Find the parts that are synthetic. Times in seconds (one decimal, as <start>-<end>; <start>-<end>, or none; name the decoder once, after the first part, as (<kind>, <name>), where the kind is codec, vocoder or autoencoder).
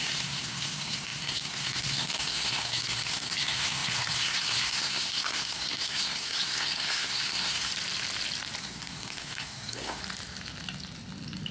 0.0-7.7 (codec, SNAC); 8.6-10.0